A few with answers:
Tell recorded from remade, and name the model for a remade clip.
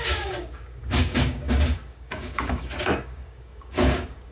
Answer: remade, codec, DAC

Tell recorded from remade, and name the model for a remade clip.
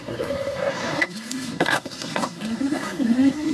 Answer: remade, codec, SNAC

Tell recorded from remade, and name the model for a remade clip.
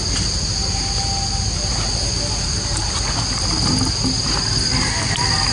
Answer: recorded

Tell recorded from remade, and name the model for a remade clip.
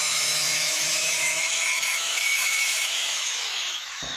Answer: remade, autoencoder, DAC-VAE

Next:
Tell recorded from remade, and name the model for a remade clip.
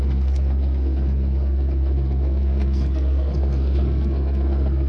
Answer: remade, codec, SNAC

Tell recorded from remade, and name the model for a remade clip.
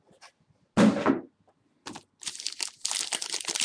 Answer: recorded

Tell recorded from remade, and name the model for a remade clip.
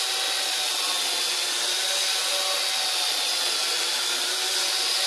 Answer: recorded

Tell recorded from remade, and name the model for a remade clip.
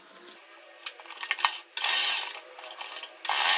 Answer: recorded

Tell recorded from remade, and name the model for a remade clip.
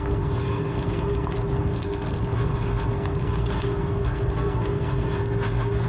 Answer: remade, codec, SNAC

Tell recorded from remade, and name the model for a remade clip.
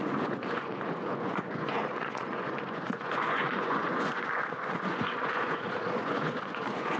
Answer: remade, vocoder, Vocos